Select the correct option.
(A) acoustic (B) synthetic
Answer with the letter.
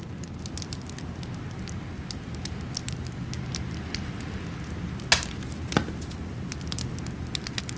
A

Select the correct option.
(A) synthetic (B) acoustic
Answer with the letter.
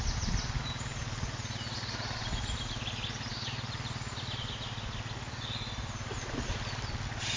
B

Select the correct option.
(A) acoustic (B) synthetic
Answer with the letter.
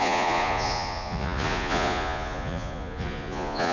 B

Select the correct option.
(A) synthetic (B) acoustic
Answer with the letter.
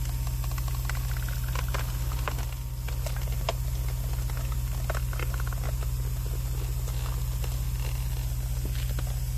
B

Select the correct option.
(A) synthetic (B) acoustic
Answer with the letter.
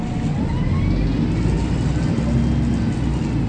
B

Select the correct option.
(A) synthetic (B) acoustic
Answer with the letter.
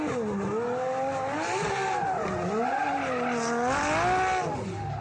B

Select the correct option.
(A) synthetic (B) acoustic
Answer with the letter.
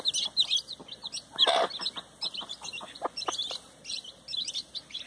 B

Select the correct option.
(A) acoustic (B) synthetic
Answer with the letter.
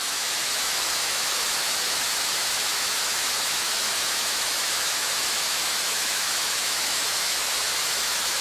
B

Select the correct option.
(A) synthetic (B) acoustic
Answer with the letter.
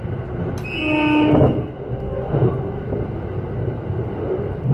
B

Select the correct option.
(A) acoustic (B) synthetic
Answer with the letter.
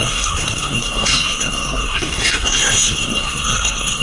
B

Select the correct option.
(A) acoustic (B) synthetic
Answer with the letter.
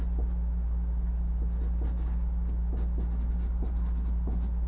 A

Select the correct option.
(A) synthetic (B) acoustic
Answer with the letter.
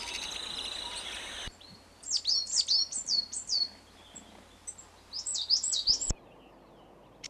B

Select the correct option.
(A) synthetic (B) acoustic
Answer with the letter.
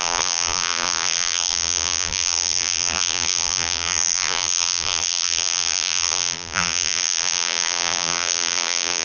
A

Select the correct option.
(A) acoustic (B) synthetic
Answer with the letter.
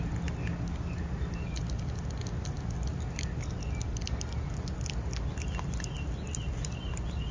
A